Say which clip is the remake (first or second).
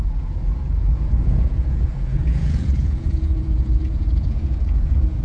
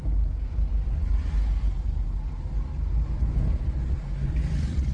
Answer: first